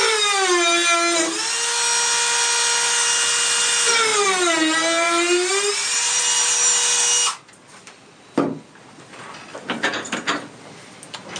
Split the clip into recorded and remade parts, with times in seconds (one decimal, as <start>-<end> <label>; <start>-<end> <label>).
0.0-4.1 recorded; 4.1-6.2 remade; 6.2-11.4 recorded